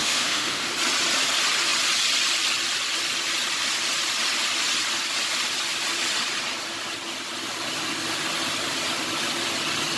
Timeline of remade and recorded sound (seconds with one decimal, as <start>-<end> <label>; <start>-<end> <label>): 0.0-0.7 remade; 0.7-10.0 recorded